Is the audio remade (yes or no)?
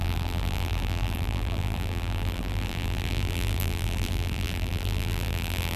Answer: yes